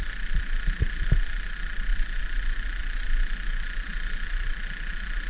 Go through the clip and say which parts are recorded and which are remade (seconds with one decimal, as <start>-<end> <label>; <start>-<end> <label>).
0.0-5.3 recorded